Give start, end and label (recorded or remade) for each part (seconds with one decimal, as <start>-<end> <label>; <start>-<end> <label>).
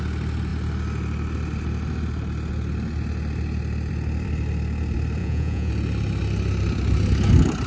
0.0-5.2 recorded; 5.2-5.7 remade; 5.7-7.7 recorded